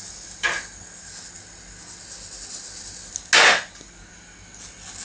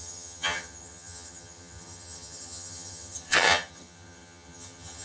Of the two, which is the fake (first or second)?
second